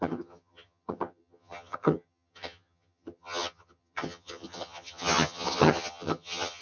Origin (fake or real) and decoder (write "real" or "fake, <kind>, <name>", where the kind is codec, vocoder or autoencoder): fake, vocoder, HiFi-GAN